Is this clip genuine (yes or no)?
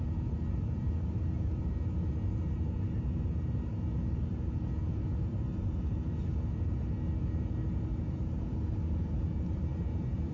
no